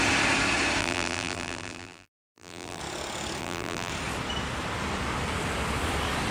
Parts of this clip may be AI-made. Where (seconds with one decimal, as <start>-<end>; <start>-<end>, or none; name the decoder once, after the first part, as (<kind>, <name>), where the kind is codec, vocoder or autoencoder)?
0.8-2.8 (vocoder, BigVGAN v2); 3.4-3.9